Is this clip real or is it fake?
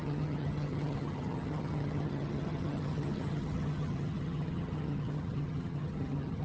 fake